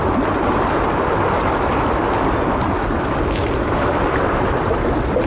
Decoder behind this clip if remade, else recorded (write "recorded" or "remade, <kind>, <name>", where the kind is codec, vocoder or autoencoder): recorded